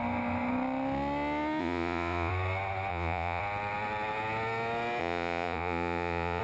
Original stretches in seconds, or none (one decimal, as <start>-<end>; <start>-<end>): 0.0-1.6; 2.3-2.9; 3.4-5.0